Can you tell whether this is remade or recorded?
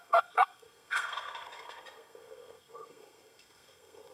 remade